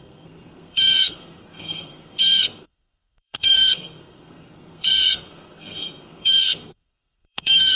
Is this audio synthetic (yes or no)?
yes